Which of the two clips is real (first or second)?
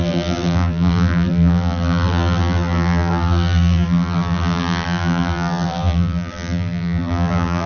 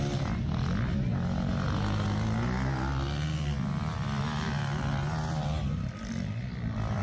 second